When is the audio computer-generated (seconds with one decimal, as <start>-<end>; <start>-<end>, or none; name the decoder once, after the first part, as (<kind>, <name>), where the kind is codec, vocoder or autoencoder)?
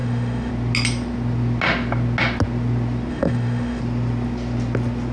0.0-0.5 (autoencoder, DAC-VAE); 3.1-3.8